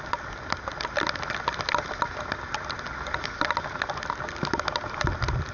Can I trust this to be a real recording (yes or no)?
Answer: yes